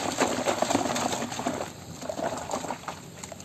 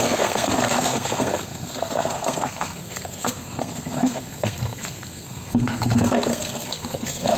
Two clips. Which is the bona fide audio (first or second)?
first